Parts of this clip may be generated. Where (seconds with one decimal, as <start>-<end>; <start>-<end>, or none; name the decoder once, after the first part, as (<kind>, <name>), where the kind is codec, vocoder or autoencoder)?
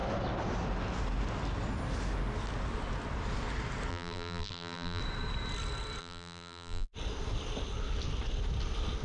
3.9-5.0 (vocoder, BigVGAN v2); 6.0-6.9